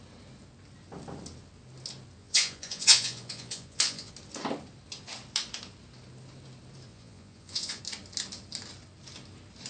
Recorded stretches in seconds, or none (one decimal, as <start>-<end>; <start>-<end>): 0.0-2.2; 4.1-6.9; 7.8-9.7